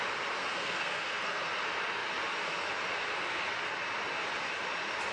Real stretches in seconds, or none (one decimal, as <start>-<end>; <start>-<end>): 0.0-0.4; 1.5-5.1